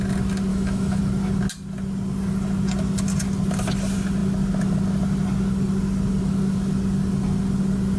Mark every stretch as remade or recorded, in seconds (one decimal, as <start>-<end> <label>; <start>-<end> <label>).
0.0-0.5 recorded; 0.5-1.0 remade; 1.0-8.0 recorded